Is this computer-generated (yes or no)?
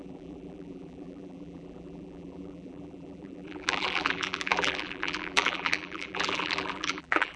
yes